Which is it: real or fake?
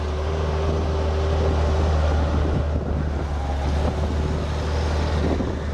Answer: real